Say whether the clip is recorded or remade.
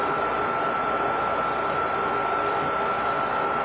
recorded